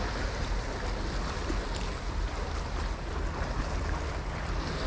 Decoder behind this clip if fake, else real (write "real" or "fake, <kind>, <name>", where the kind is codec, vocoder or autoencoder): real